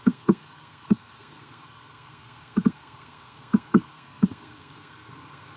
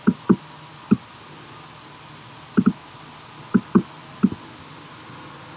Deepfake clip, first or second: first